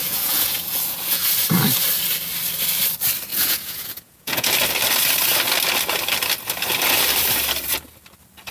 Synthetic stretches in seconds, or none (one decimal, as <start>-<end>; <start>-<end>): 0.0-1.3; 3.3-4.5